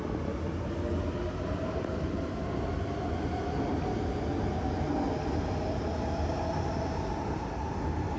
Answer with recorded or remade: recorded